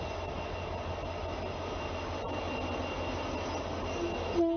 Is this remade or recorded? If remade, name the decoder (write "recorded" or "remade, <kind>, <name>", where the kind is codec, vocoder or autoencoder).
recorded